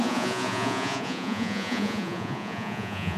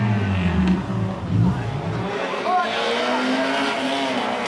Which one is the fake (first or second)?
first